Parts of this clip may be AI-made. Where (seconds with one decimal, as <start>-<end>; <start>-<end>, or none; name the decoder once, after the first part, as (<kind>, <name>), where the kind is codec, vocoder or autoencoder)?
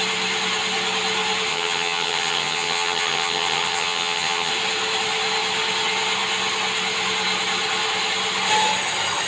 1.5-4.5 (vocoder, HiFi-GAN)